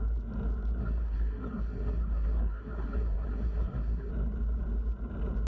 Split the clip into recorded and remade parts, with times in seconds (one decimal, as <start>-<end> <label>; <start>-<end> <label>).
0.0-0.8 recorded; 0.8-4.1 remade; 4.1-5.5 recorded